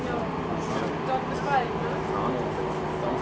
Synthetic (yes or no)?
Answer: no